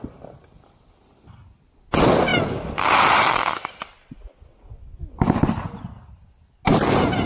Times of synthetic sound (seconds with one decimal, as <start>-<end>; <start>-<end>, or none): none